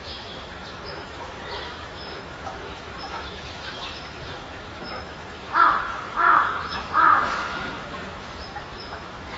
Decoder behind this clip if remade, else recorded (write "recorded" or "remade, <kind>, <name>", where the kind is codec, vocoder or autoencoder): remade, autoencoder, DAC-VAE